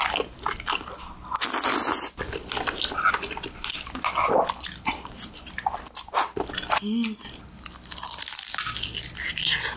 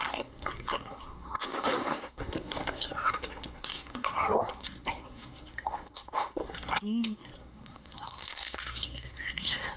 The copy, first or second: second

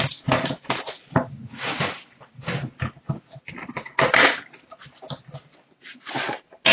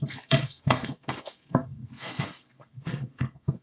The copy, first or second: second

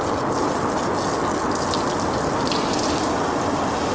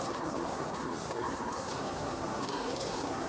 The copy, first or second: second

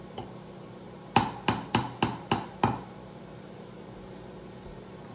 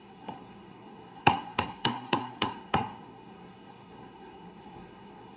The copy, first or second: second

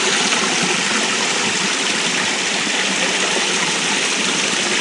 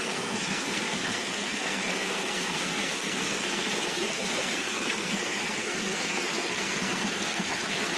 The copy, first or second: second